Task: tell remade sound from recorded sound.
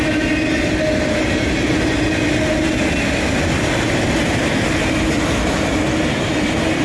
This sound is recorded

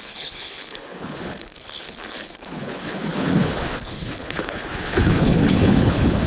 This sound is remade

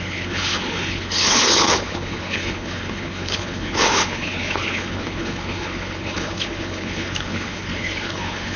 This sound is remade